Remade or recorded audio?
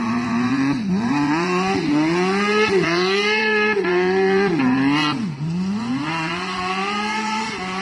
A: remade